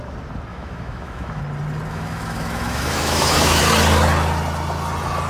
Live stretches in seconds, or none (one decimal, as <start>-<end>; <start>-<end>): 0.0-0.5; 1.4-1.9; 3.6-5.3